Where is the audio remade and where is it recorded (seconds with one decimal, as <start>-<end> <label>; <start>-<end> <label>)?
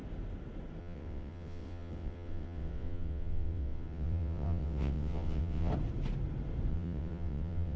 0.0-0.8 recorded; 0.8-5.7 remade; 5.7-6.7 recorded; 6.7-7.8 remade